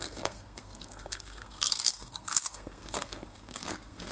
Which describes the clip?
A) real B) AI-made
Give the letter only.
B